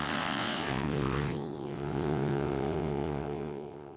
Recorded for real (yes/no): no